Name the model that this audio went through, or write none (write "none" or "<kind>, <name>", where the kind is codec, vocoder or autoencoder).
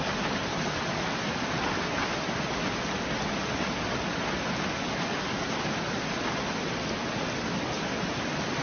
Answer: none